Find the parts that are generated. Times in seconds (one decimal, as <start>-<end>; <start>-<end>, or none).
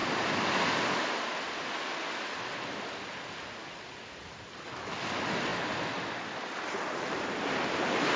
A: none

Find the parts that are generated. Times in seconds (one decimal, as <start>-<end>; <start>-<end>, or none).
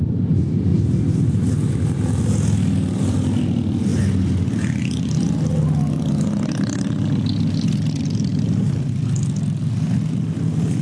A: 0.7-2.2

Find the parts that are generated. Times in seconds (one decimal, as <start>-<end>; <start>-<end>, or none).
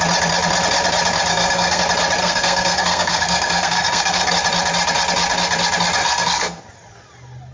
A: 1.3-1.8; 2.2-4.3; 6.0-6.6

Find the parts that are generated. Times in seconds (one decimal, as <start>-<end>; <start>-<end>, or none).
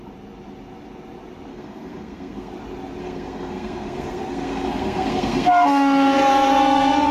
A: 1.5-2.5; 3.0-7.1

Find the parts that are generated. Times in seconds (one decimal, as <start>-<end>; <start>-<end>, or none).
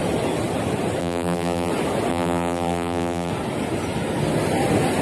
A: 1.0-1.7; 2.1-3.3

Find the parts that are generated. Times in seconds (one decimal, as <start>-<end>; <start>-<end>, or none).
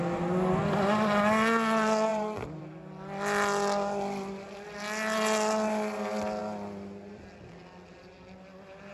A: 2.1-2.6